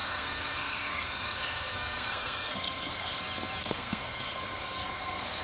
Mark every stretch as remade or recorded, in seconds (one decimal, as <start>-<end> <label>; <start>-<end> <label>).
0.0-3.2 remade; 3.2-3.6 recorded; 3.6-5.4 remade